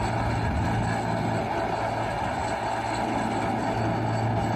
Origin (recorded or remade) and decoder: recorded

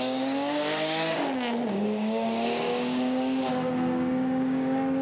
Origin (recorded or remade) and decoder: remade, codec, DAC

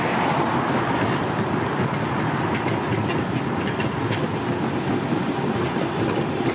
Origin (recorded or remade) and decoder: recorded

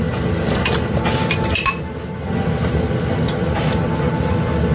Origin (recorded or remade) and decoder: recorded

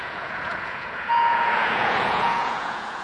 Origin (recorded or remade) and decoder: remade, vocoder, Vocos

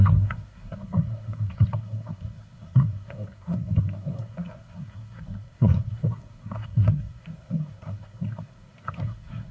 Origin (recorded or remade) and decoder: remade, codec, SNAC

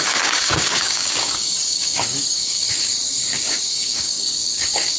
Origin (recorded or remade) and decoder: remade, codec, DAC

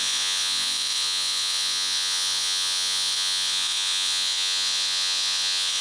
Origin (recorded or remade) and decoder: remade, vocoder, Vocos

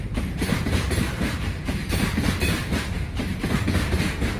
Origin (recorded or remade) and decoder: remade, vocoder, BigVGAN v2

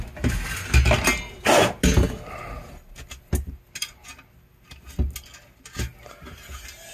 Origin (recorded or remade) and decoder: recorded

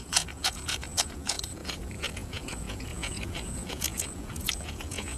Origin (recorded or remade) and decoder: remade, vocoder, Vocos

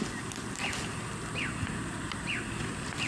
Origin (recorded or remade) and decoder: recorded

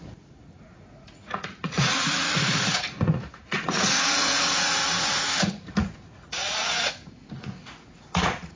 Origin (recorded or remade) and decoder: remade, vocoder, Vocos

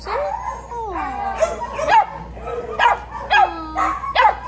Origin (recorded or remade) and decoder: recorded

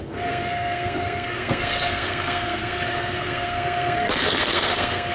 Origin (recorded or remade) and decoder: remade, codec, SNAC